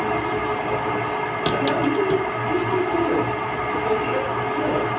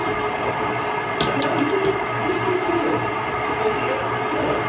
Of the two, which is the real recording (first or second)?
first